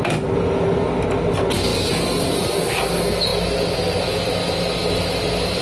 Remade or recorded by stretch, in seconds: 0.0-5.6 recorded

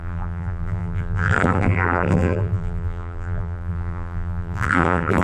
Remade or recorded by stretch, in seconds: 0.0-5.2 remade